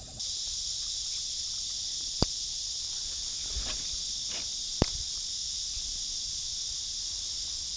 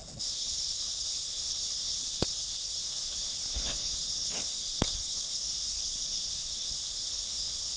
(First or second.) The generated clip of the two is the second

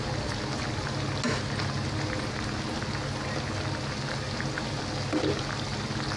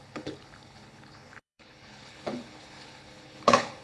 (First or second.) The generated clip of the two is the second